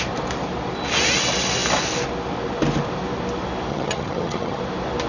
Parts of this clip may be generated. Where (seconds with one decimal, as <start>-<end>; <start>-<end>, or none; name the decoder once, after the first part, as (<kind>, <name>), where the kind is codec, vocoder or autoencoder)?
3.7-4.6 (vocoder, HiFi-GAN)